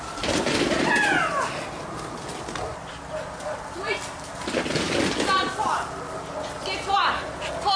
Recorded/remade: recorded